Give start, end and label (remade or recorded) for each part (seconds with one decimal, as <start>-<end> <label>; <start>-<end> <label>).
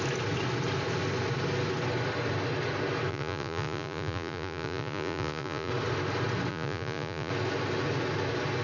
0.0-3.1 recorded; 3.1-5.7 remade; 5.7-6.5 recorded; 6.5-7.3 remade; 7.3-8.6 recorded